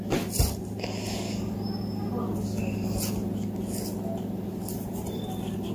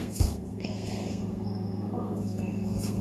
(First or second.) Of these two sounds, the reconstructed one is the second